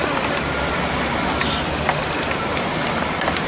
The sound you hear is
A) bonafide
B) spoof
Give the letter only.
A